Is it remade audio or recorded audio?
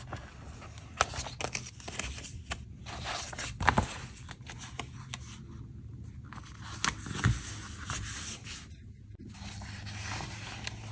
recorded